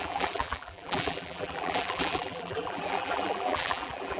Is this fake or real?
fake